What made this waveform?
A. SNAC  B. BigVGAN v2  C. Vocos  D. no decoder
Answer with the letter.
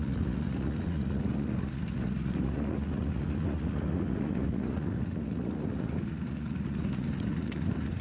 C